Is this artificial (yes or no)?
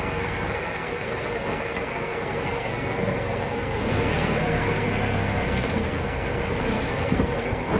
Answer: yes